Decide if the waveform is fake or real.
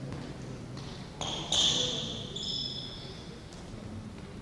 real